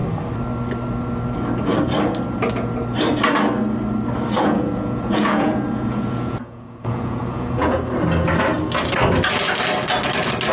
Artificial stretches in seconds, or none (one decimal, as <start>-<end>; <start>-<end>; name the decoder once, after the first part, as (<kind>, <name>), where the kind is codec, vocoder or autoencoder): 4.4-7.8 (vocoder, Vocos)